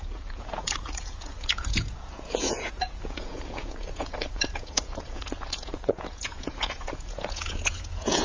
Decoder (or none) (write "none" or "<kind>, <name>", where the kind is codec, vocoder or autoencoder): vocoder, Vocos